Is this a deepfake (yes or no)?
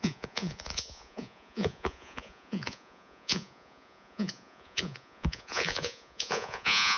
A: yes